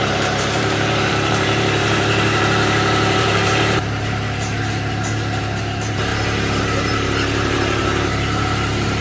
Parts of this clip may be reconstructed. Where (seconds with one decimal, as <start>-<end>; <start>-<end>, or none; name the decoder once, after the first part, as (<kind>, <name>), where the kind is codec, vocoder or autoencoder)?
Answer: 0.0-6.1 (vocoder, BigVGAN v2); 6.6-9.0